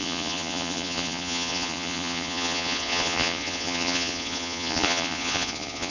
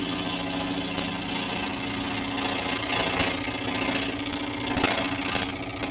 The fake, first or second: first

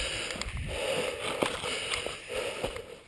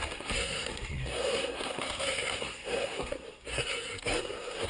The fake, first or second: second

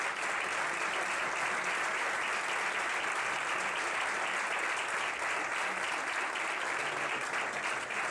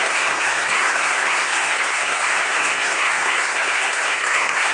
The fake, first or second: second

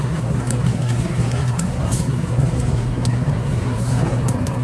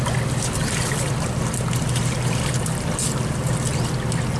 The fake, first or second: first